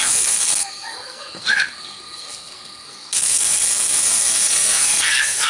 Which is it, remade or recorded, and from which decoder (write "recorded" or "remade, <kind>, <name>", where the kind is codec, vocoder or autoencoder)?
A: remade, codec, SNAC